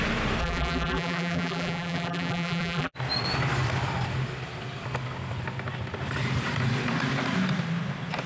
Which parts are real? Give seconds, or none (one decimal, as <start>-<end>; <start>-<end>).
0.0-0.4; 2.9-8.3